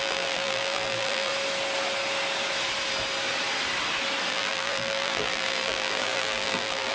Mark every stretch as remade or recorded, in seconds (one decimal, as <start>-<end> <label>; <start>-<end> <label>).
0.0-1.3 remade; 1.3-4.3 recorded; 4.3-6.9 remade